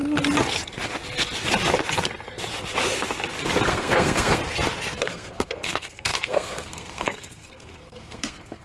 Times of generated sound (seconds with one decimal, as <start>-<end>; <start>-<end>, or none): 3.7-4.4; 5.0-8.6